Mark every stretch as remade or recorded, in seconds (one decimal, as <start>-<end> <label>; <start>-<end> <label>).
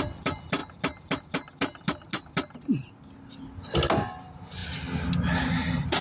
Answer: 0.0-6.0 recorded